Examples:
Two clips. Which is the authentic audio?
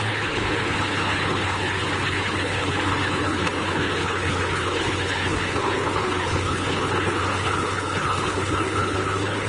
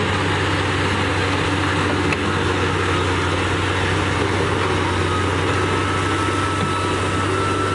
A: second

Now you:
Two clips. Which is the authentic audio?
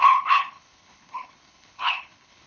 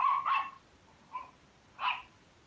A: second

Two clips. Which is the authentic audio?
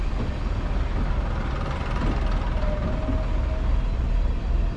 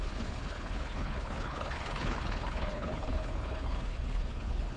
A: first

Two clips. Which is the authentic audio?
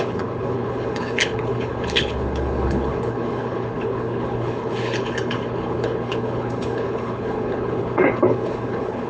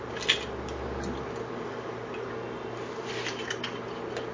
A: second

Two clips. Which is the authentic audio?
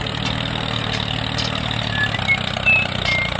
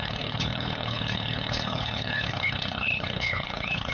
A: first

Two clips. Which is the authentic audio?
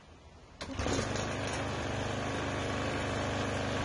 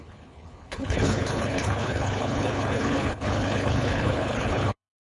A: first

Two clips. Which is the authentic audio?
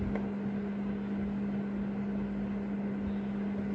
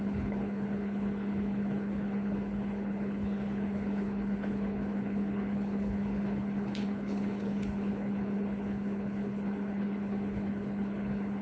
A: first